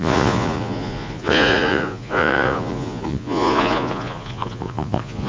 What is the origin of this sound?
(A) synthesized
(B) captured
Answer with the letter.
A